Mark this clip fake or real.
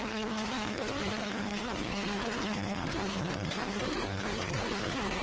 fake